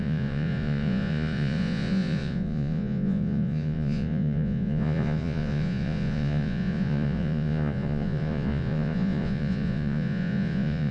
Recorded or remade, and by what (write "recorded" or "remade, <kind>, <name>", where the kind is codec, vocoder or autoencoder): remade, vocoder, Vocos